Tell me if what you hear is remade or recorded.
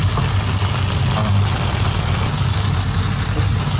recorded